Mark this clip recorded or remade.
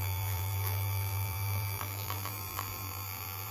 remade